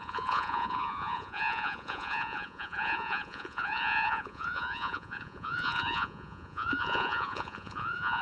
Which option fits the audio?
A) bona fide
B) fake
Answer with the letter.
B